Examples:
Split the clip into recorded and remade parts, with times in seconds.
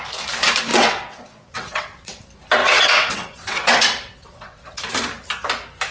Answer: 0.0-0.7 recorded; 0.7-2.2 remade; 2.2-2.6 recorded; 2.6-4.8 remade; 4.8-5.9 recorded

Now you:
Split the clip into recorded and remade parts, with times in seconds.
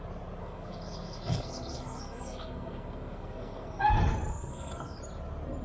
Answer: 0.0-0.4 recorded; 0.4-3.8 remade; 3.8-4.3 recorded; 4.3-5.0 remade; 5.0-5.6 recorded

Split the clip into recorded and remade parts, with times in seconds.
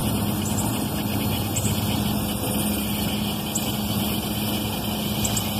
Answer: 0.0-5.6 recorded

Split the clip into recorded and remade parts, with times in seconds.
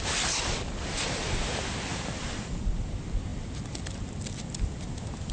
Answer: 0.0-1.9 recorded; 1.9-2.6 remade; 2.6-5.3 recorded